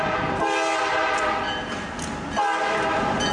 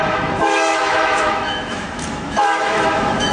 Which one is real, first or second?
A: first